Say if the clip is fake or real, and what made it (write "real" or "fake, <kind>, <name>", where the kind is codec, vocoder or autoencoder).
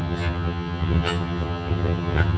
fake, vocoder, HiFi-GAN